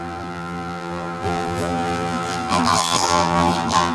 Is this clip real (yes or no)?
no